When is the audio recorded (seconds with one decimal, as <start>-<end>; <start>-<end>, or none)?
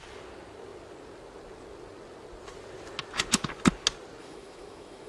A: 0.0-4.2